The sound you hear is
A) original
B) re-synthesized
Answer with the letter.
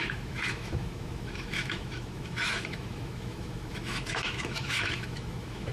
B